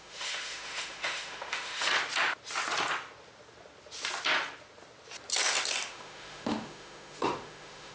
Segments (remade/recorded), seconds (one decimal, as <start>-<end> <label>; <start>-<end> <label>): 0.0-1.9 remade; 1.9-5.9 recorded; 5.9-7.9 remade